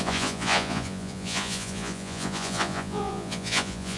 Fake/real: fake